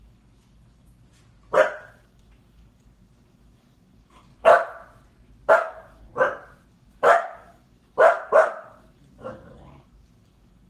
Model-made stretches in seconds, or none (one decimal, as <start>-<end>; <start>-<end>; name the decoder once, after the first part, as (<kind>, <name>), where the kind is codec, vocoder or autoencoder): 0.0-1.1 (codec, DAC); 1.8-4.3; 5.5-6.1; 6.7-10.7